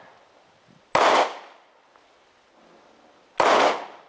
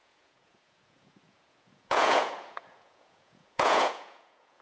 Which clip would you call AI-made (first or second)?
second